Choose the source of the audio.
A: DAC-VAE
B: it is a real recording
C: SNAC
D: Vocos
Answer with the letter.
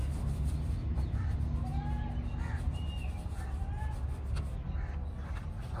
B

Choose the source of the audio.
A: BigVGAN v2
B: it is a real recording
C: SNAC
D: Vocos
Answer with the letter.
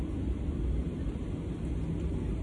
B